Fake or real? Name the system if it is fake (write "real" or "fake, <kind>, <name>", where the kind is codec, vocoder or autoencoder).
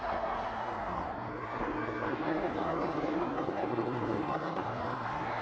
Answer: fake, codec, SNAC